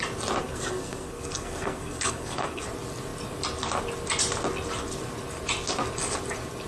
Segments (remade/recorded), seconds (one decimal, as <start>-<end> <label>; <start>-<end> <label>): 0.0-0.4 recorded; 0.4-2.6 remade; 2.6-6.7 recorded